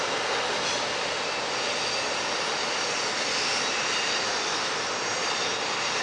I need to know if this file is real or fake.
real